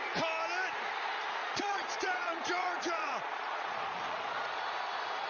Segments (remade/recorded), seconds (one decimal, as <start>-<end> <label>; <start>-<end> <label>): 0.0-1.4 recorded; 1.4-4.6 remade; 4.6-5.3 recorded